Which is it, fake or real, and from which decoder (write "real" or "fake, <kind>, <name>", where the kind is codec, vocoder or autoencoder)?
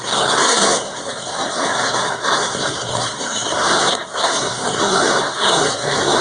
fake, codec, SNAC